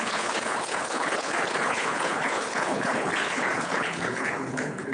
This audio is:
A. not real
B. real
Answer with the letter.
A